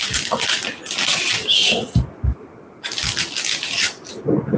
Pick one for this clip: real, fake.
real